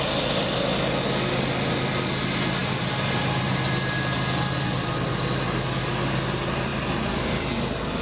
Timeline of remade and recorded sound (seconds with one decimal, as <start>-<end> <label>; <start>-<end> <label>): 0.0-8.0 recorded